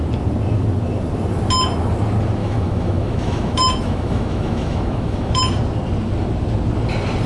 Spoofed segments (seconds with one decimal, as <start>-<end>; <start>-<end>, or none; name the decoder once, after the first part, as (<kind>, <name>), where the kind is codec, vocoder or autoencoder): 2.4-5.4 (autoencoder, DAC-VAE)